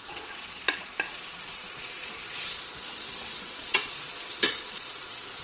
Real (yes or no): no